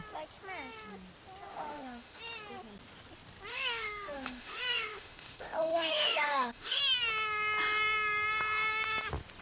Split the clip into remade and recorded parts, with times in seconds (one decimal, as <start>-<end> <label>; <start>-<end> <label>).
0.0-1.5 recorded; 1.5-2.2 remade; 2.2-3.5 recorded; 3.5-6.8 remade; 6.8-9.4 recorded